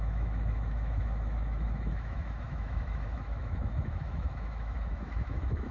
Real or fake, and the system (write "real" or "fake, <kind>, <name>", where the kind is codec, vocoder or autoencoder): fake, autoencoder, DAC-VAE